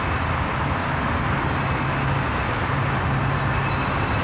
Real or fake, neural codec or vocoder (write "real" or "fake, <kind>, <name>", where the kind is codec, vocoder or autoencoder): real